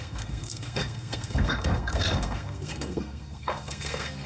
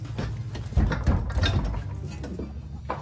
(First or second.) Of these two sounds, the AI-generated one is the first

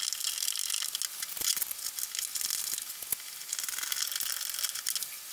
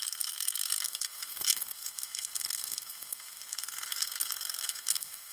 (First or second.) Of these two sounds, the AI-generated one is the second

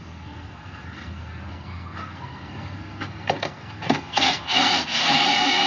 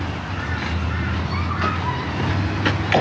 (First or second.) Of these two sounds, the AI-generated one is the first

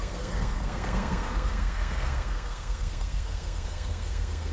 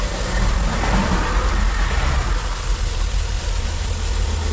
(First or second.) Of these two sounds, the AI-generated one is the first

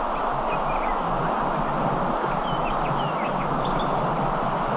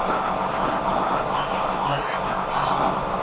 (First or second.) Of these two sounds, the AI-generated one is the second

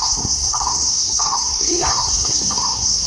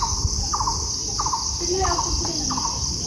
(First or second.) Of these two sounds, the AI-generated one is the first